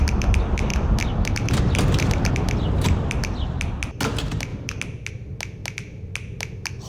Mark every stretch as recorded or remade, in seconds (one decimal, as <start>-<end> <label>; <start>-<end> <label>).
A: 0.0-6.9 recorded